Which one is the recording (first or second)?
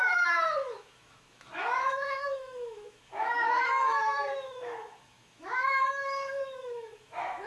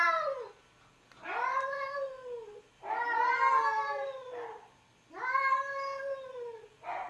second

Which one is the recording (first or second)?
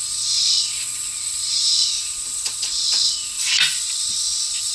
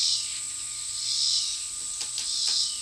second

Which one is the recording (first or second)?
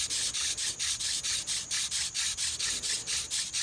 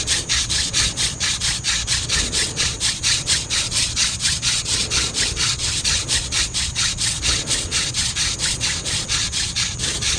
first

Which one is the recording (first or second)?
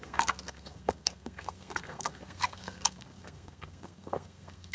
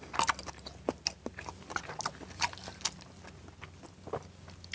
second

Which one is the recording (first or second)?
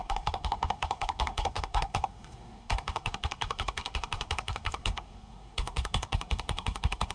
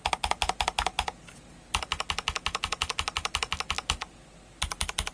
second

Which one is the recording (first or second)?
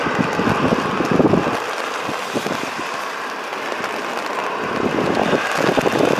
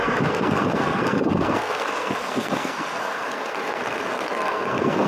first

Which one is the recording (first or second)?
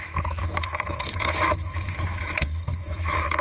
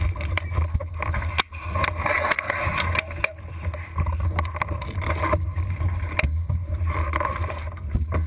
second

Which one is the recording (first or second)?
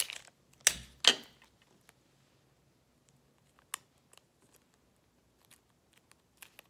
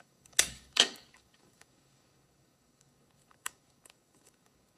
first